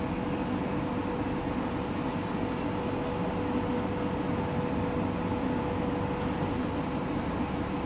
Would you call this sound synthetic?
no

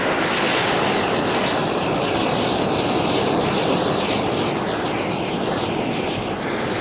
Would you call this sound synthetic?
no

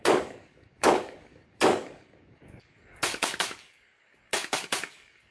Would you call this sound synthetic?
yes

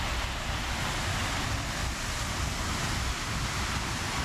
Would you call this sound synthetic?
no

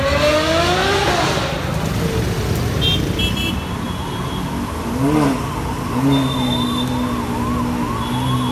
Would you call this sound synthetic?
no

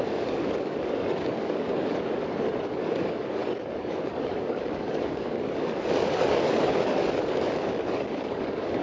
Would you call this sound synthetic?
yes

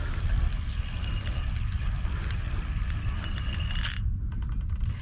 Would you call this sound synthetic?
no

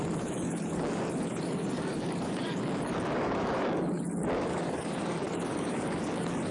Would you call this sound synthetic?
yes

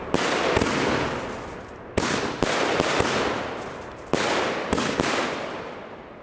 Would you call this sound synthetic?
no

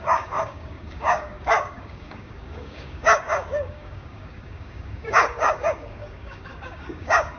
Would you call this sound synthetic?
yes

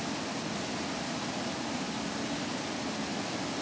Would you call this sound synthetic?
no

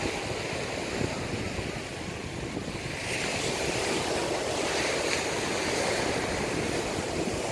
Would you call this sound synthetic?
no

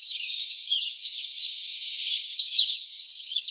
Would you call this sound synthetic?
yes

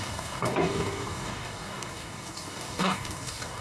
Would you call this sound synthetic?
yes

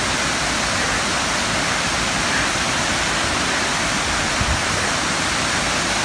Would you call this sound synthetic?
no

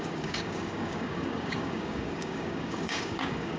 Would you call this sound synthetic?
yes